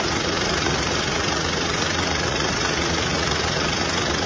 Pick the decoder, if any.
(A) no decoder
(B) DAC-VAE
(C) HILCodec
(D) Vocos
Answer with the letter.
D